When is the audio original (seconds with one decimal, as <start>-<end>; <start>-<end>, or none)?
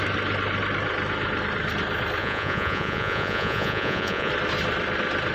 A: 0.0-2.2; 4.3-5.3